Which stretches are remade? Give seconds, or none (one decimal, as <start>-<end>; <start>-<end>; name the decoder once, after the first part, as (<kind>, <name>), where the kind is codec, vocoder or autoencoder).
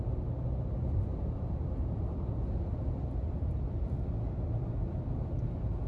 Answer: none